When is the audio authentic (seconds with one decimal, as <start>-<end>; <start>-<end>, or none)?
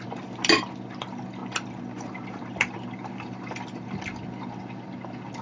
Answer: 0.0-5.4